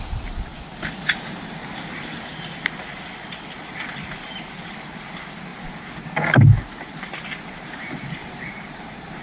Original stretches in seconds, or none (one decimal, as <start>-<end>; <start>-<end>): 0.0-8.2